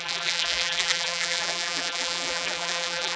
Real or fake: fake